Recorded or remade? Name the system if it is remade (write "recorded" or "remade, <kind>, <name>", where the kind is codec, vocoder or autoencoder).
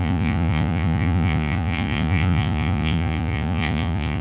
remade, vocoder, Vocos